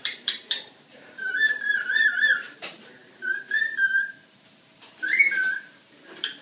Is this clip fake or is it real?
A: fake